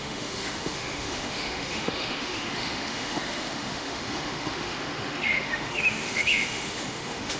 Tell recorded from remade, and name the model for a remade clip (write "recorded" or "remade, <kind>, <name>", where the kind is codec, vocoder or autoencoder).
remade, autoencoder, DAC-VAE